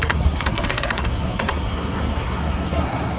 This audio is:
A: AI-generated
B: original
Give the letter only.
A